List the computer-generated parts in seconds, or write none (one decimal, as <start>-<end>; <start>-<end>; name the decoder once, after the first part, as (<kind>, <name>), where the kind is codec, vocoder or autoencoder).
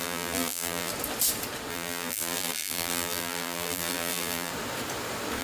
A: 0.0-0.9 (vocoder, BigVGAN v2); 1.7-4.5